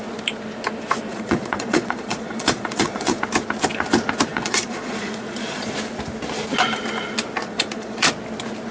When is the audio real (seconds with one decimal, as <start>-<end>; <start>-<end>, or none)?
0.0-1.1; 3.2-4.3; 5.7-7.4; 8.1-8.7